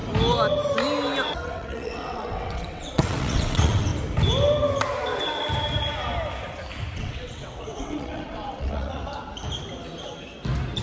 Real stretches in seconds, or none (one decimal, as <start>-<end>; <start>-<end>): 0.0-1.3; 3.9-7.0; 9.0-10.8